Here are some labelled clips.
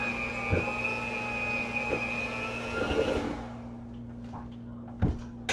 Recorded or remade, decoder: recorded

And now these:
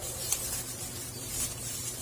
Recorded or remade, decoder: remade, vocoder, BigVGAN v2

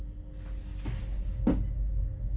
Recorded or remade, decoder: recorded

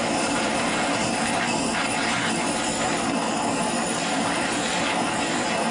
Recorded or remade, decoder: remade, vocoder, BigVGAN v2